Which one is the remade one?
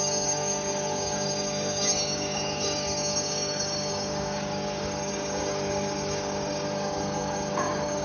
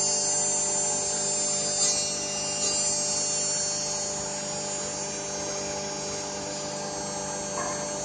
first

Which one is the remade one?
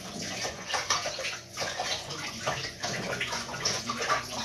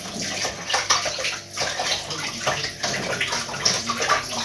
first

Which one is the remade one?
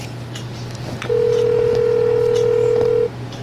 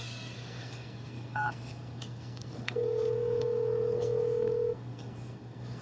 second